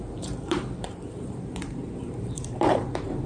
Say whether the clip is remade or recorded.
remade